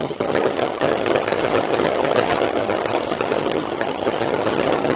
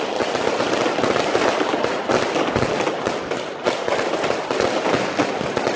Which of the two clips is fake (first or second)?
first